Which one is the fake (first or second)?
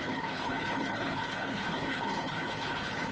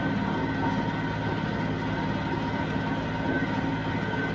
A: first